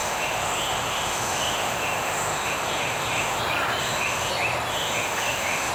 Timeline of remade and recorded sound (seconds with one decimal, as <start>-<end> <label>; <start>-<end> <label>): 0.0-3.4 remade; 3.4-3.8 recorded; 3.8-4.3 remade; 4.3-4.7 recorded; 4.7-5.7 remade